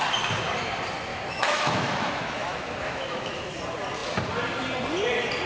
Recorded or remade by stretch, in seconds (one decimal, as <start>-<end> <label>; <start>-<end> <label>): 0.0-1.1 recorded; 1.1-3.5 remade; 3.5-5.5 recorded

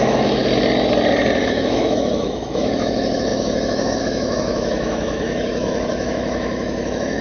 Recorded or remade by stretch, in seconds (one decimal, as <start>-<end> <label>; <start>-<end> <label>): 0.0-0.4 remade; 0.4-1.4 recorded; 1.4-7.2 remade

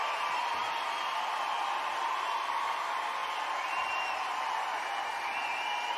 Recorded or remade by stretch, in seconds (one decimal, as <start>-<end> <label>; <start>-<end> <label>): 0.0-6.0 recorded

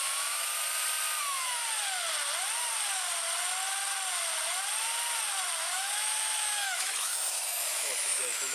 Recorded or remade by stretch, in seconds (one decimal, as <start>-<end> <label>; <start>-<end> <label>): 0.0-0.5 remade; 0.5-1.2 recorded; 1.2-1.6 remade; 1.6-5.6 recorded; 5.6-8.5 remade